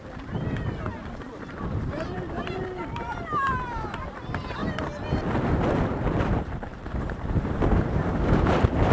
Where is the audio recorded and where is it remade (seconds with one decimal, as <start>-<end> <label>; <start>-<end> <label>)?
0.0-4.6 remade; 4.6-6.0 recorded; 6.0-8.9 remade

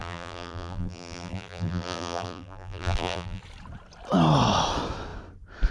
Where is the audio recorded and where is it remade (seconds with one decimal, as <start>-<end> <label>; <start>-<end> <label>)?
0.0-3.4 remade; 3.4-5.7 recorded

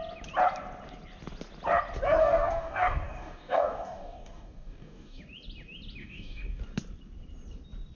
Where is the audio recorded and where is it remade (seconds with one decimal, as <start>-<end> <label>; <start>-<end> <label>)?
0.0-2.2 recorded; 2.2-5.2 remade; 5.2-6.0 recorded; 6.0-6.6 remade; 6.6-7.9 recorded

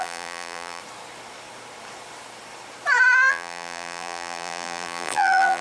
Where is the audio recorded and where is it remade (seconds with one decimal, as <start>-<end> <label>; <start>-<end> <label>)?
0.0-0.8 remade; 0.8-3.3 recorded; 3.3-5.6 remade

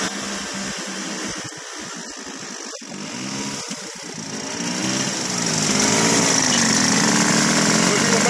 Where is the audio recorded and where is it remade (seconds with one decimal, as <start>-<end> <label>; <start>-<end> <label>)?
0.0-8.3 recorded